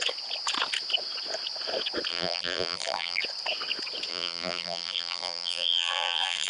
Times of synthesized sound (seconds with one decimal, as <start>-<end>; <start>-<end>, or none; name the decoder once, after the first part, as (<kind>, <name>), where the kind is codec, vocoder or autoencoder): 2.1-3.2 (vocoder, BigVGAN v2); 4.1-6.5